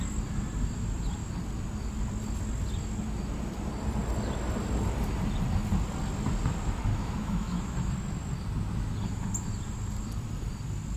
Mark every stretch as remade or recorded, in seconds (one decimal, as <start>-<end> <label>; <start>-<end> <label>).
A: 0.0-6.9 recorded; 6.9-7.9 remade; 7.9-11.0 recorded